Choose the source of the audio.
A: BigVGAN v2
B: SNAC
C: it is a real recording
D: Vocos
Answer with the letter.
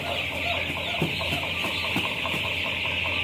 C